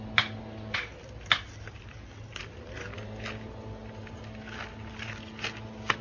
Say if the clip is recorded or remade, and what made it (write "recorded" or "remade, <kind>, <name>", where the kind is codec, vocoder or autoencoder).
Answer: recorded